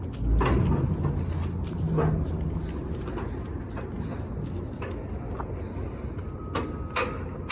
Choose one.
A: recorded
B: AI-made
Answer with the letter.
A